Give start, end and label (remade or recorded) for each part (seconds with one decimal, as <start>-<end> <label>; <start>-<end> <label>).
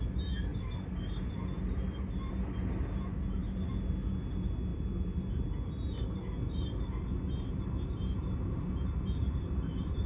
0.0-4.7 recorded; 4.7-5.7 remade; 5.7-9.2 recorded; 9.2-10.1 remade